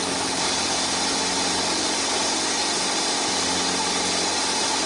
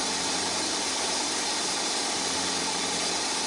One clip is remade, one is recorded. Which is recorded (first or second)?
first